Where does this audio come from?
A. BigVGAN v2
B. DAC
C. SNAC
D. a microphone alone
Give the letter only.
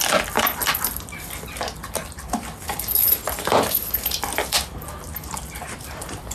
A